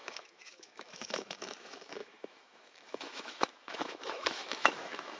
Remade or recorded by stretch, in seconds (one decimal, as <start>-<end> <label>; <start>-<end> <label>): 0.0-5.2 remade